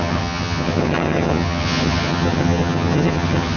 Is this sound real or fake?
fake